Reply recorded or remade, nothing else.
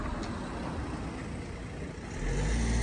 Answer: recorded